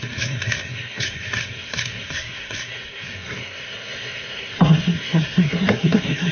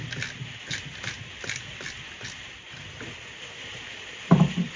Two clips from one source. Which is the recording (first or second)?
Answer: second